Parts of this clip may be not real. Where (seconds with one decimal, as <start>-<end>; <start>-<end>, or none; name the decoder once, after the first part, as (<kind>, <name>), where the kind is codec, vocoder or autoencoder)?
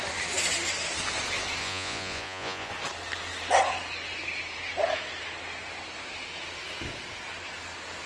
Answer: 1.6-2.7 (vocoder, Vocos)